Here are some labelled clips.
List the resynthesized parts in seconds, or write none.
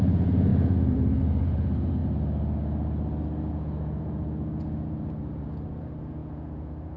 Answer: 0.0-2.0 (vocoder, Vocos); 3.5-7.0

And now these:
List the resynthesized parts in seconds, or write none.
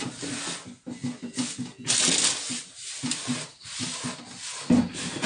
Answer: none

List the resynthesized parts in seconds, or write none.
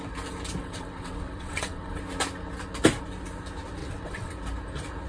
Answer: 0.6-2.0 (vocoder, WaveNeXt); 3.8-4.3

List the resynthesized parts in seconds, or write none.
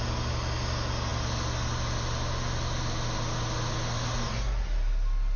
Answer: none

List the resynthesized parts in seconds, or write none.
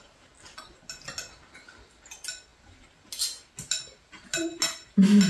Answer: none